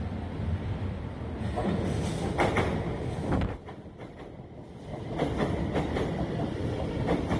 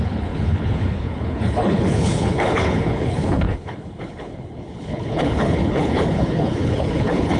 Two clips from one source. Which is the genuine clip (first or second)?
first